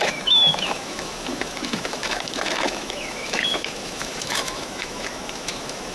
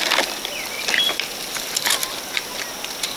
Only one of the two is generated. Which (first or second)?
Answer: first